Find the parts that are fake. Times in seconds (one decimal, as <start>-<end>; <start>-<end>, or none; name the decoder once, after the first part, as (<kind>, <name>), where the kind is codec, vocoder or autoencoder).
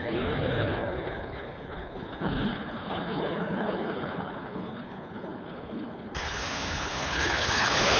0.0-8.0 (codec, HILCodec)